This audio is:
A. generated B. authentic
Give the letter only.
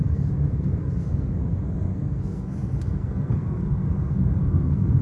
A